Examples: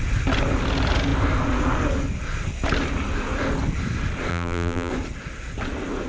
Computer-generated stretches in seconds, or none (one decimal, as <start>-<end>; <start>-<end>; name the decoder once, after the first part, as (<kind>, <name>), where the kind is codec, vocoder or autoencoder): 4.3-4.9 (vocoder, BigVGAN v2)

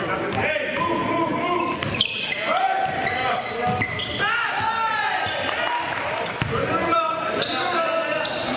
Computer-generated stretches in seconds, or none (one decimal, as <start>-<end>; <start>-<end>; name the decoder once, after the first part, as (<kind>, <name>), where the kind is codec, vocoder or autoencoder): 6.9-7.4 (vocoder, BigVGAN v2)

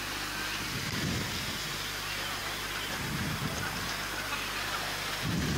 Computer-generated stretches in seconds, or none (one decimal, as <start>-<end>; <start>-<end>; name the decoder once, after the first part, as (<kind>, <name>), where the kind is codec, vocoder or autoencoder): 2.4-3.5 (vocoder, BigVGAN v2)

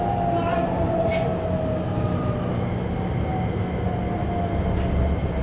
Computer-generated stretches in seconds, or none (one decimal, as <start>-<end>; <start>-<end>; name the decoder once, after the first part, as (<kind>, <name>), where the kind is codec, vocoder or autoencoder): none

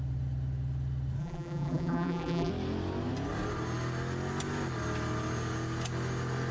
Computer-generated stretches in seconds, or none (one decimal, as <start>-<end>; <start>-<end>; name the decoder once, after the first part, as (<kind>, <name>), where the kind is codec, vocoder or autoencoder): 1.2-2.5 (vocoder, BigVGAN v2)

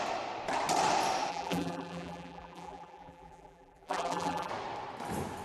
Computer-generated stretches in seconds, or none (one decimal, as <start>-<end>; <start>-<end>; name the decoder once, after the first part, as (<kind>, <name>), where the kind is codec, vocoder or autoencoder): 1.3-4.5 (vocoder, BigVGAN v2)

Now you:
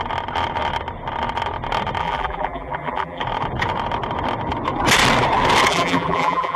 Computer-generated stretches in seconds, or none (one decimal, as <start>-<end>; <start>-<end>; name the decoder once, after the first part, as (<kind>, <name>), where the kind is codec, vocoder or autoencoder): 2.0-3.2 (vocoder, BigVGAN v2); 5.7-6.6

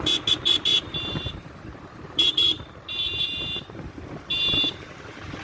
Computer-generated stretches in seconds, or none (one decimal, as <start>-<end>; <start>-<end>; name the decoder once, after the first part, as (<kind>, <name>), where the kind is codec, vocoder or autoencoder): 0.7-3.9 (vocoder, BigVGAN v2); 4.3-4.9